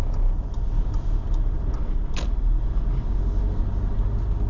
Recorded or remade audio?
recorded